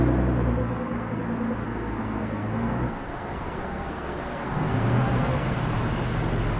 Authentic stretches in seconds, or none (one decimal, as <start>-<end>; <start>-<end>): 0.0-0.6; 1.2-1.6; 5.6-6.6